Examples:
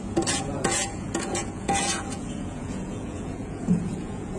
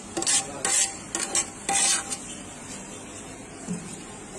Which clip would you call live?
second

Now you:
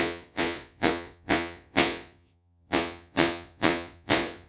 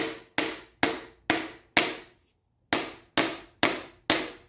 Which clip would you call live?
second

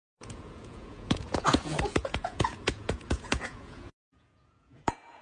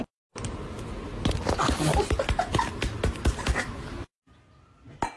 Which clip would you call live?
second